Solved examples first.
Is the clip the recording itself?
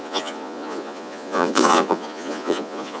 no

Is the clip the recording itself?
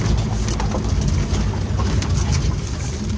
yes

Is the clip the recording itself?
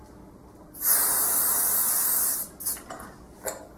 yes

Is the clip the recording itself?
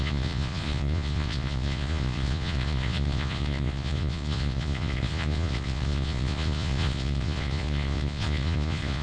no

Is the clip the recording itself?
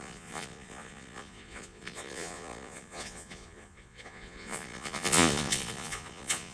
no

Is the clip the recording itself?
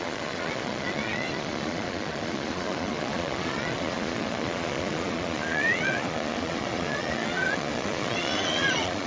no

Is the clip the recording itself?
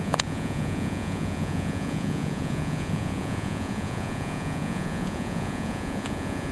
no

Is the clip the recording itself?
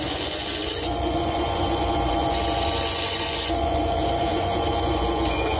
no